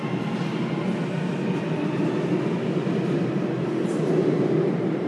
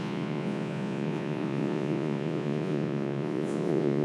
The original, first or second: first